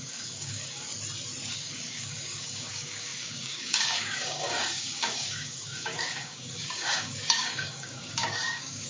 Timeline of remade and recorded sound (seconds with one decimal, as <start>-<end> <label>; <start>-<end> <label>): 0.0-0.9 remade; 0.9-1.5 recorded; 1.5-8.9 remade